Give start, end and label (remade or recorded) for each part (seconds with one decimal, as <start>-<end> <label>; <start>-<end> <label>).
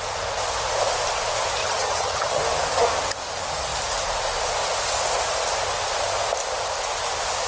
0.0-1.6 recorded; 1.6-2.4 remade; 2.4-7.5 recorded